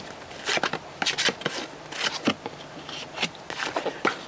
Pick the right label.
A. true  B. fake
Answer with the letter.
A